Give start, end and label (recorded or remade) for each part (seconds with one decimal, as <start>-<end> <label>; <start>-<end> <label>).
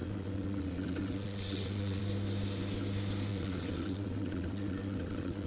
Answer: 0.0-2.0 remade; 2.0-3.3 recorded; 3.3-5.5 remade